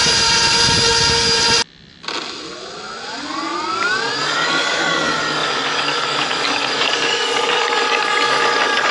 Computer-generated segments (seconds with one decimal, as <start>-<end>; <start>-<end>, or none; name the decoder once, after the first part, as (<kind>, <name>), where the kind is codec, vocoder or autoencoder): 4.2-8.9 (codec, DAC)